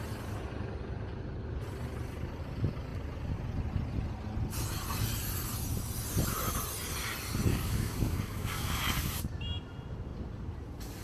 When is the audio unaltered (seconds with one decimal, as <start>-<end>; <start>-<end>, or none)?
0.0-7.5; 9.2-11.0